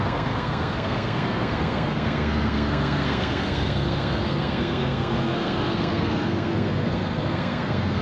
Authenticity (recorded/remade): remade